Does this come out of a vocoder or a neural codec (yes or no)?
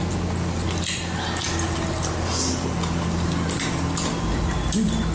no